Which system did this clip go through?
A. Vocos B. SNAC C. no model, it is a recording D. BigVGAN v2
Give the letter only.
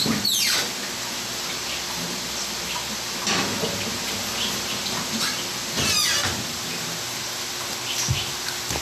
C